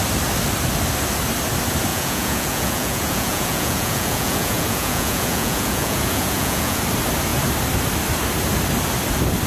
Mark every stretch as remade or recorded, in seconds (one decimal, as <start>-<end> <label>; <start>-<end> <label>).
0.0-1.9 recorded; 1.9-6.8 remade; 6.8-9.5 recorded